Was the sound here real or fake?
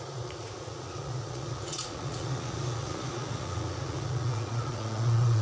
fake